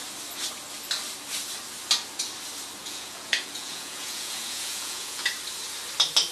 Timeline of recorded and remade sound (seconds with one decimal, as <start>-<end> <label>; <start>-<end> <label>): 0.0-2.8 recorded; 2.8-5.3 remade; 5.3-6.3 recorded